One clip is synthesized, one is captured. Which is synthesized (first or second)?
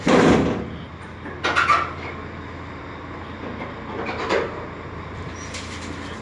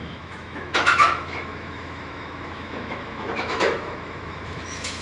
second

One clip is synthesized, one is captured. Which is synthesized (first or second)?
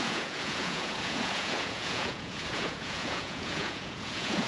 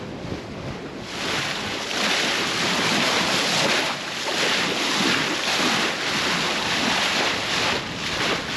first